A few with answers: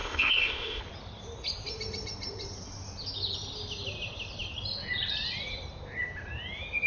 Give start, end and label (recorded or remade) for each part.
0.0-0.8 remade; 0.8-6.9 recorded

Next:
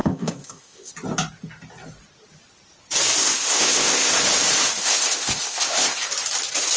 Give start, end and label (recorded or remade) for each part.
0.0-0.9 remade; 0.9-3.2 recorded; 3.2-4.1 remade; 4.1-4.8 recorded; 4.8-6.1 remade; 6.1-6.8 recorded

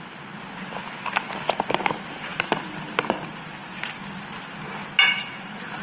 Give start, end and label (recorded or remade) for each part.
0.0-5.8 recorded

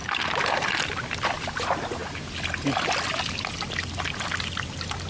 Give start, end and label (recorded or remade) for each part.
0.0-5.1 recorded

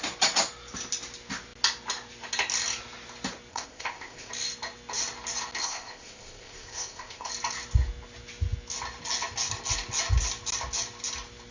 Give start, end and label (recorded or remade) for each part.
0.0-3.5 recorded; 3.5-4.3 remade; 4.3-5.6 recorded; 5.6-7.3 remade; 7.3-11.5 recorded

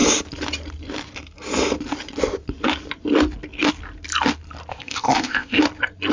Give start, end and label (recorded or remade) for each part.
0.0-4.7 recorded; 4.7-5.6 remade; 5.6-6.1 recorded

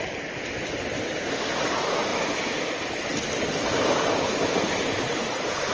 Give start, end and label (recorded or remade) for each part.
0.0-5.7 recorded